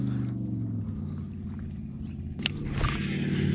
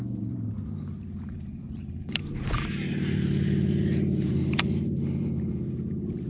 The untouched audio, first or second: first